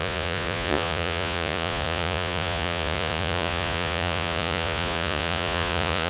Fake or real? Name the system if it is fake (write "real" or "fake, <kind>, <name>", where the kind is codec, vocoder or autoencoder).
fake, vocoder, Vocos